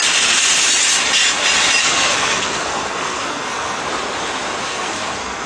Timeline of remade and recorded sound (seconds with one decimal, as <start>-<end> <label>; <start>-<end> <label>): 0.0-1.8 recorded; 1.8-3.8 remade; 3.8-4.7 recorded; 4.7-5.5 remade